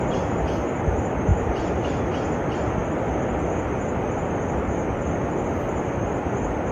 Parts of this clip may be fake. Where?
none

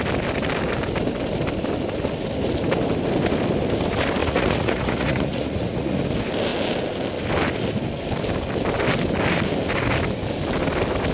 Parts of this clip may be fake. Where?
4.2-6.0 (vocoder, Vocos)

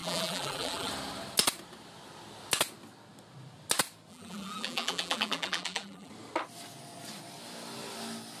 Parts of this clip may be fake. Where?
0.0-0.9 (vocoder, BigVGAN v2); 4.1-6.1

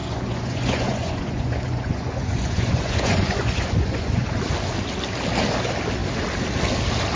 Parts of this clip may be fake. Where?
0.0-4.3 (vocoder, Vocos)

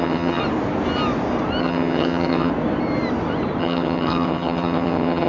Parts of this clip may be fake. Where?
0.0-0.4 (vocoder, HiFi-GAN); 1.6-2.5; 3.6-5.3

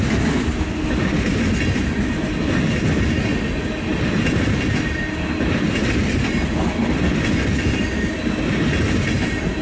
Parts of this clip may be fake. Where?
none